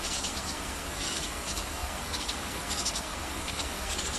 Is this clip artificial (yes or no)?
yes